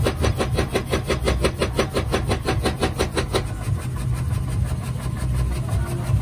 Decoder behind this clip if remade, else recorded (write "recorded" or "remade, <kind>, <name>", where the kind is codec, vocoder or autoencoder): recorded